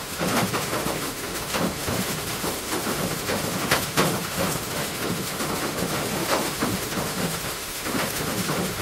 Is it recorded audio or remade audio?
remade